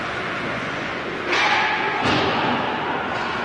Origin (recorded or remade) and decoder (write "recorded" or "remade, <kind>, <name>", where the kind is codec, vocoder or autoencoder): remade, vocoder, Vocos